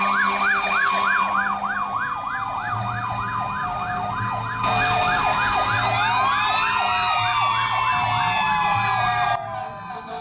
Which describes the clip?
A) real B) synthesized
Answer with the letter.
A